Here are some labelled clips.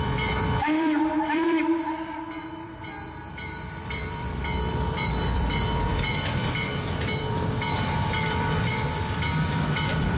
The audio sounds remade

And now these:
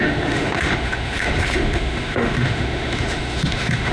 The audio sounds remade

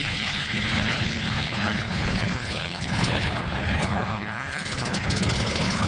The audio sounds remade